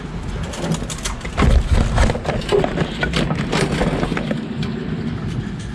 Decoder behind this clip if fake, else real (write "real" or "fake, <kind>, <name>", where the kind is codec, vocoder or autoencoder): real